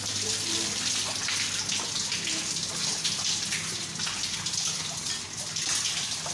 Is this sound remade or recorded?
recorded